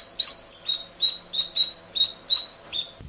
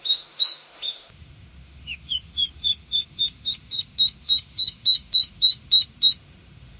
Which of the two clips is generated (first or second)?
second